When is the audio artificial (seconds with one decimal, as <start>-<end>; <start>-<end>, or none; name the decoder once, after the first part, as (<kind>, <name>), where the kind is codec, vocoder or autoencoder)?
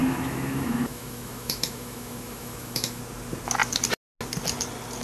0.0-3.0 (autoencoder, DAC-VAE)